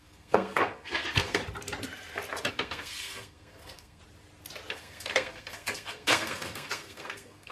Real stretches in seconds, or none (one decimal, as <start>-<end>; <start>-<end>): 1.4-2.5; 4.0-4.7